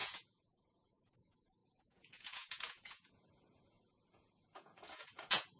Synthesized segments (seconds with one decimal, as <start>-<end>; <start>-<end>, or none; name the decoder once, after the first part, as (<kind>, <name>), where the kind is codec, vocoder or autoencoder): 0.0-5.6 (vocoder, Vocos)